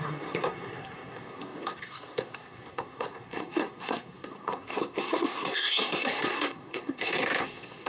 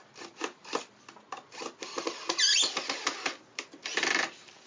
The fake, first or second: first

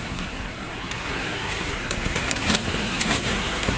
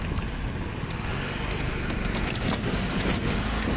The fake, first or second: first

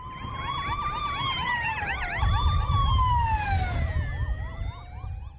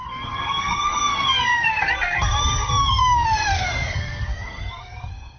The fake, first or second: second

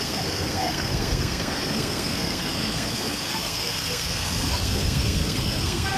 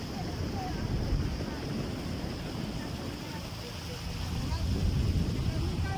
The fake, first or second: first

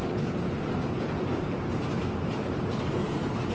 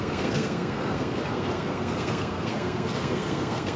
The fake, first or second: second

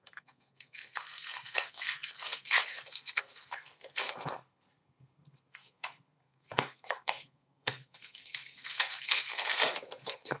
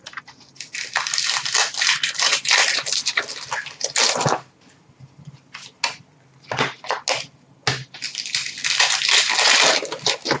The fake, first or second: first